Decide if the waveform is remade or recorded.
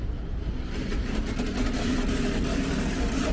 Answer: recorded